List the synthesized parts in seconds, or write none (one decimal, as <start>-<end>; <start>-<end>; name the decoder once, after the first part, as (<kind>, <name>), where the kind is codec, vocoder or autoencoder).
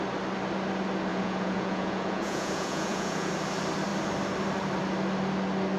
1.1-3.3 (vocoder, Vocos)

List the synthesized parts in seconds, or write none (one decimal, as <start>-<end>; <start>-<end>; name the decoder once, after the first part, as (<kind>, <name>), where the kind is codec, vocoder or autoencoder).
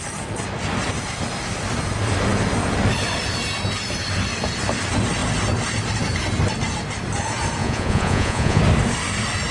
7.6-8.6 (vocoder, Vocos)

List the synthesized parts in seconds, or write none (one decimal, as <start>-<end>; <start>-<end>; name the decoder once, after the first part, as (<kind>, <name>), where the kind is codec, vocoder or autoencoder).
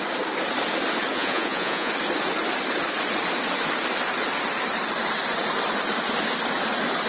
1.1-1.9 (vocoder, Vocos)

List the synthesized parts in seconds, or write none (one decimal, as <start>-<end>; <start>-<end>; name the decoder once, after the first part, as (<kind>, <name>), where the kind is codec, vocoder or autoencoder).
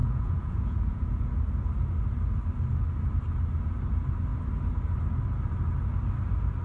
0.0-1.3 (vocoder, Vocos)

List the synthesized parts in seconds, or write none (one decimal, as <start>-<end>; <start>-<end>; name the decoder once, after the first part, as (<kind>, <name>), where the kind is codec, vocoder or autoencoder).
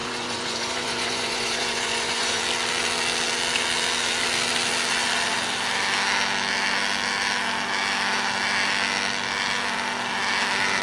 0.0-2.4 (vocoder, Vocos)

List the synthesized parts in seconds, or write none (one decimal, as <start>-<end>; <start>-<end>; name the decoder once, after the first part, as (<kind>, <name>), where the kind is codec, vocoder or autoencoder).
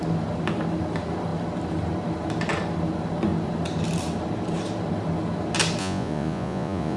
5.8-7.0 (vocoder, Vocos)